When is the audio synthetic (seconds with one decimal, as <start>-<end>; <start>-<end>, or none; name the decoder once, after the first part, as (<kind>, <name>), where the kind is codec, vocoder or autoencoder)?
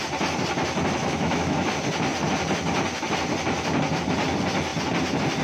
1.0-1.7 (autoencoder, DAC-VAE)